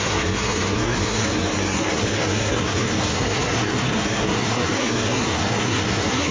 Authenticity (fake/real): fake